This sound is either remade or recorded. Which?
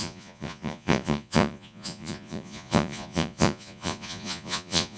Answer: remade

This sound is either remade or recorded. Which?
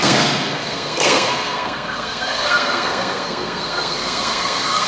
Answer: remade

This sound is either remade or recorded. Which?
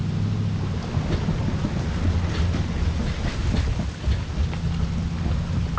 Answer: recorded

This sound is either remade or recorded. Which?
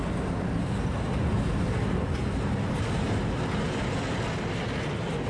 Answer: recorded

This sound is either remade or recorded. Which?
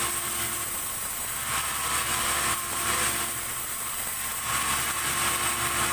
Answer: recorded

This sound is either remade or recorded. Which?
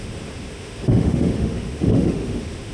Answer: remade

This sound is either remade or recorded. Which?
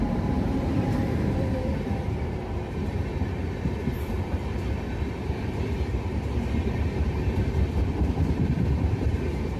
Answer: remade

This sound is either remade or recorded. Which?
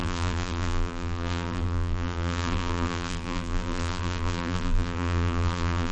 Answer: remade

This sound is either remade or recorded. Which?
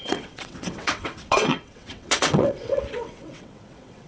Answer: remade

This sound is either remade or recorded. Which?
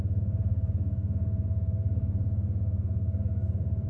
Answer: remade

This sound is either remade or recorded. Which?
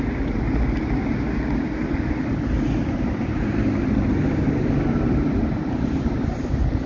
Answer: recorded